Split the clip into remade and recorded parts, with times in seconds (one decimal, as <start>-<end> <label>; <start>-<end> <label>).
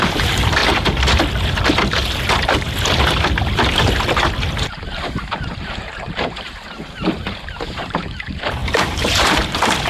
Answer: 0.0-0.6 remade; 0.6-4.5 recorded; 4.5-9.9 remade